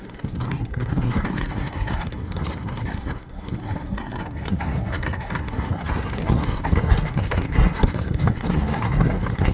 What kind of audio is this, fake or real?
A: fake